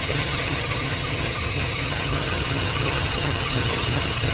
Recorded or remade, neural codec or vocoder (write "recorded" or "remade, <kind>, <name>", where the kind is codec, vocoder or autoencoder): remade, vocoder, HiFi-GAN